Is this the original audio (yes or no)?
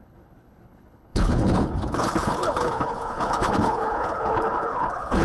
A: no